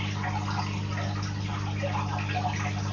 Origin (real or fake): real